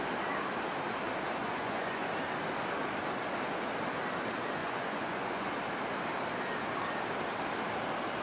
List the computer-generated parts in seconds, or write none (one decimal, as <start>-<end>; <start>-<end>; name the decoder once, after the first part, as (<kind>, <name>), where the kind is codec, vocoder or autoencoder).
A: 1.4-2.1 (vocoder, Vocos); 4.6-5.5